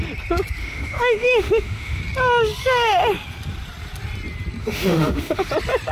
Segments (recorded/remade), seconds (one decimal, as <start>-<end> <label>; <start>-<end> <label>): 0.0-0.6 recorded; 0.6-2.0 remade; 2.0-4.6 recorded; 4.6-5.5 remade; 5.5-5.9 recorded